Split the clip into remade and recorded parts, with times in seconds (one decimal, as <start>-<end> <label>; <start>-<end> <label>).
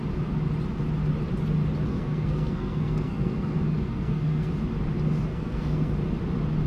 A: 0.0-1.9 recorded; 1.9-4.5 remade; 4.5-5.3 recorded; 5.3-5.9 remade; 5.9-6.7 recorded